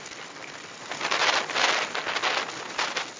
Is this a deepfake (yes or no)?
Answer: no